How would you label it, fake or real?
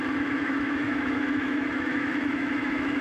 fake